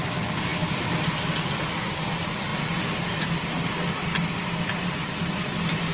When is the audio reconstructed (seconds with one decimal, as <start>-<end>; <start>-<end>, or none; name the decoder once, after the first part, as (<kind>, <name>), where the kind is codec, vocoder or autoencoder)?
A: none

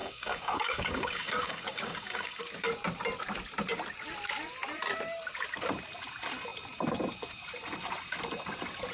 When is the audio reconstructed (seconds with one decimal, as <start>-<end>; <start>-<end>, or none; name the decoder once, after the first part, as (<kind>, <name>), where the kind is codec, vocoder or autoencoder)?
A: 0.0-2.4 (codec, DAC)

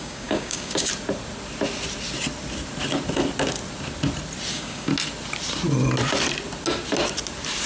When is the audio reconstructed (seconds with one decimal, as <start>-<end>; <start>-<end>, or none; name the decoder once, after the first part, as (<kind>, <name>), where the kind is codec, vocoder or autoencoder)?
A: 0.0-0.9 (codec, DAC); 4.5-4.9

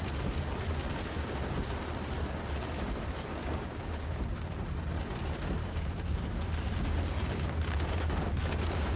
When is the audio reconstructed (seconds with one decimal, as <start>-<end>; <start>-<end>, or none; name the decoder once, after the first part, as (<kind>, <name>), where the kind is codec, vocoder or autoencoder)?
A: 3.4-4.2 (codec, DAC); 5.6-6.5; 7.2-9.0

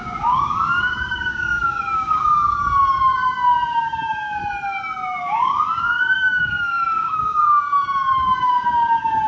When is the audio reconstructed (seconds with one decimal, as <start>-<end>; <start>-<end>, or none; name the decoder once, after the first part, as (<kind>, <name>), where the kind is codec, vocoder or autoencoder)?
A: 0.0-3.2 (codec, DAC); 3.7-4.4; 5.2-9.3

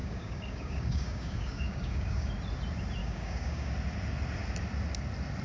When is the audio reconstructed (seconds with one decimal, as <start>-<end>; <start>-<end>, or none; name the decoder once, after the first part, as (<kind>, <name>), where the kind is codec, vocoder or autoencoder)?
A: 0.0-2.3 (codec, DAC); 3.0-3.7

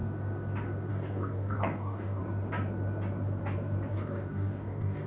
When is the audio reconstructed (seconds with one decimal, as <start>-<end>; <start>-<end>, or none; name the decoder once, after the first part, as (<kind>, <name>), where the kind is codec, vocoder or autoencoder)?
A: 0.9-2.2 (codec, DAC); 3.9-5.1

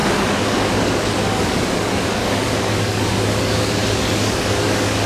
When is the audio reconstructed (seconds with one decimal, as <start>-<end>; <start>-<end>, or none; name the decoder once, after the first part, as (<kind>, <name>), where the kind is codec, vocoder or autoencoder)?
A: 0.0-5.1 (codec, DAC)